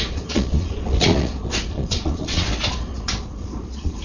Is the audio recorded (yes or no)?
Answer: no